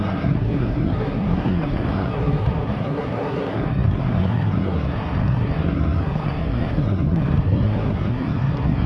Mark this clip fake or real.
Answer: fake